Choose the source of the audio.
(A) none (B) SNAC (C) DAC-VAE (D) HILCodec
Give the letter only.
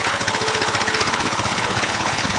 D